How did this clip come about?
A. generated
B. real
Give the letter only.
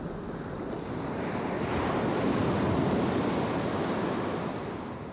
B